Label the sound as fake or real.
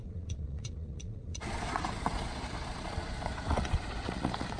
fake